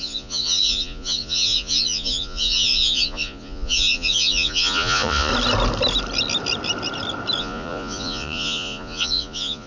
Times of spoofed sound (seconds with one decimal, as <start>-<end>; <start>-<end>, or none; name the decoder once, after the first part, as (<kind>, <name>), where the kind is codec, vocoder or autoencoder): 0.0-5.3 (vocoder, Vocos); 7.4-9.7